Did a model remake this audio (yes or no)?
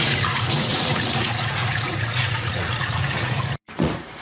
yes